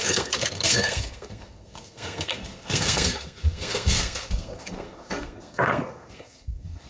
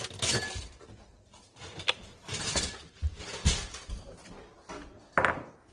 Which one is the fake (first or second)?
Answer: first